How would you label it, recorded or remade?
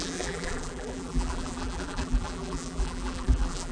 remade